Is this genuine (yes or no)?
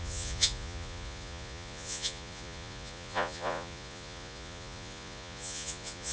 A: no